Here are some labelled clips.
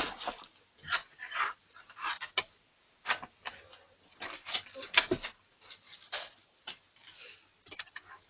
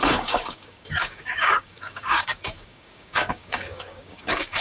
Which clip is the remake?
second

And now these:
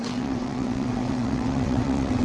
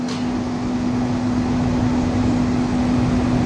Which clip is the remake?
first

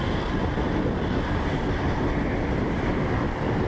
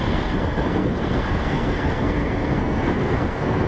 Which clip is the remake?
second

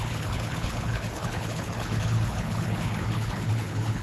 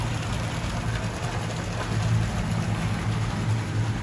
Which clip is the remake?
first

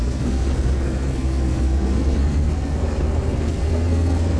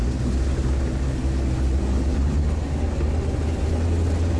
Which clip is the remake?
first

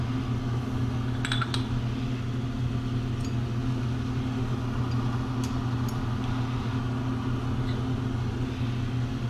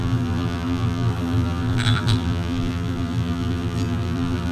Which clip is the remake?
second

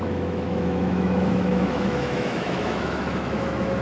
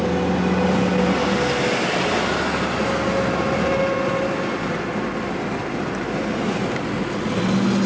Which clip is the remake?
first